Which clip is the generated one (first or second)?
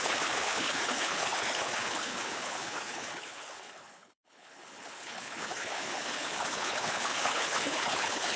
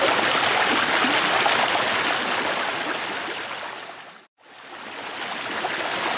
first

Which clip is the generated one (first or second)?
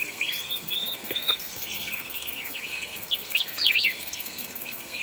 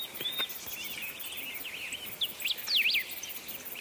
first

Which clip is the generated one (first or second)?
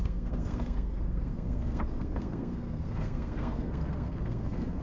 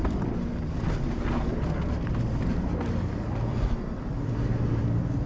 first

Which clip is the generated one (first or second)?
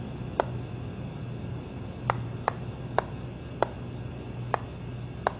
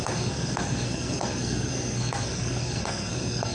second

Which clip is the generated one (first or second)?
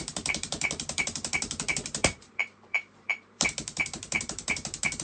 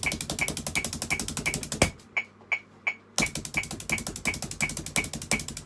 first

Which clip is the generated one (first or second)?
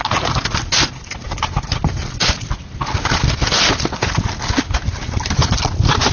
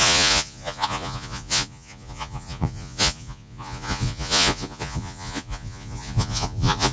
second